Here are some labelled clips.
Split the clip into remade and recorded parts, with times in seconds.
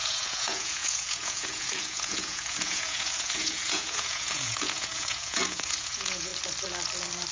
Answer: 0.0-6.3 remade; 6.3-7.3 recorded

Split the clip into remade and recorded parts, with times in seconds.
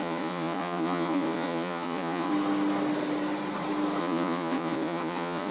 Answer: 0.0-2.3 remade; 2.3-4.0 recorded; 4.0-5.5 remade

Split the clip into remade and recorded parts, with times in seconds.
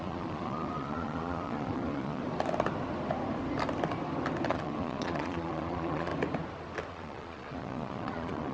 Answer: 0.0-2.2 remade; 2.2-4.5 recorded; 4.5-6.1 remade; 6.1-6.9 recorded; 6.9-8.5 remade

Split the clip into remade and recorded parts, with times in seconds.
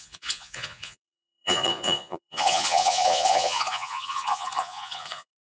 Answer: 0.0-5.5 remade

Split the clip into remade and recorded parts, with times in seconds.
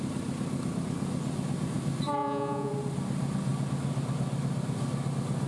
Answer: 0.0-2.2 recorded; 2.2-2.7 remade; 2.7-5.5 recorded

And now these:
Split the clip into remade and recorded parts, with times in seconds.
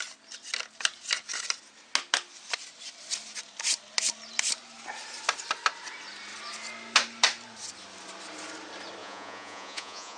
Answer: 0.0-9.0 recorded; 9.0-10.2 remade